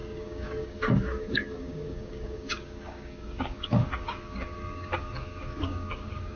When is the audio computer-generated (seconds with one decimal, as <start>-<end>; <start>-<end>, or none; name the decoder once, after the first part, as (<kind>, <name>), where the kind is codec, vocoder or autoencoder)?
0.0-6.4 (codec, DAC)